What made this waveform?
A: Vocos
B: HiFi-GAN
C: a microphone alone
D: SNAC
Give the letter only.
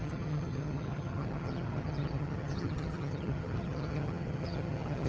B